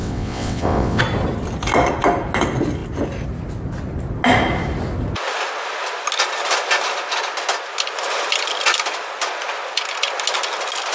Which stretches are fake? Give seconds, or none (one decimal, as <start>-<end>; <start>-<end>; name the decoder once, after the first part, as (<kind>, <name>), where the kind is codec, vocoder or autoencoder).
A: 0.0-1.0 (vocoder, WaveNeXt)